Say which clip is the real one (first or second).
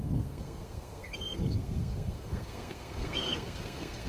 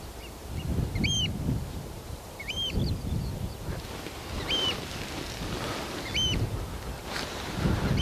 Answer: second